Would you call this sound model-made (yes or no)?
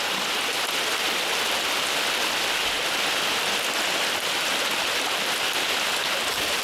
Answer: no